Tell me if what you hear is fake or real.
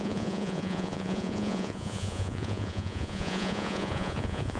fake